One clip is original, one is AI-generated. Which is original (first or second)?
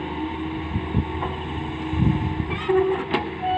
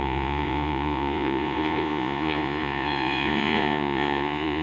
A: first